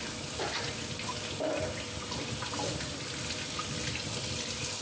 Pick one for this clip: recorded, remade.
recorded